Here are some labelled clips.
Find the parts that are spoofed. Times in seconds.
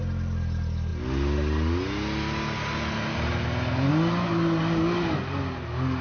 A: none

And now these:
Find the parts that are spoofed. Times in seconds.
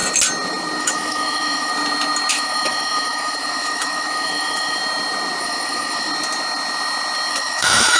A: 0.8-1.7 (autoencoder, DAC-VAE); 2.3-4.8; 5.4-6.1; 7.3-8.0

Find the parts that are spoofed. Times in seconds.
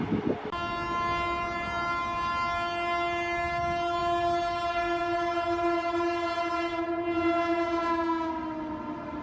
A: none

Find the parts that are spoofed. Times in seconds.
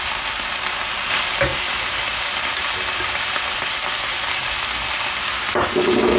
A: none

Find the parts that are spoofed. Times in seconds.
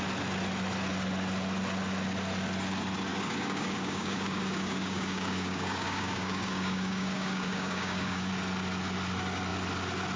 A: 3.1-8.3 (codec, DAC)